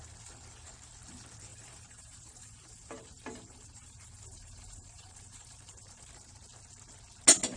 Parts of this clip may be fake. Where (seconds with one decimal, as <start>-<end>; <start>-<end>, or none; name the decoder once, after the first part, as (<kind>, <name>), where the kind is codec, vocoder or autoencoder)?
1.5-6.1 (vocoder, BigVGAN v2)